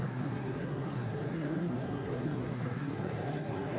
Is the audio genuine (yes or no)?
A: no